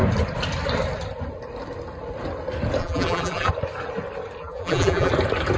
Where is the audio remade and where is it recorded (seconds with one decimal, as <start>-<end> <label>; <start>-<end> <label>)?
0.0-2.8 recorded; 2.8-3.5 remade; 3.5-4.4 recorded; 4.4-5.1 remade; 5.1-5.6 recorded